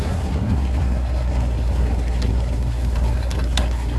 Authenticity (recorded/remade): remade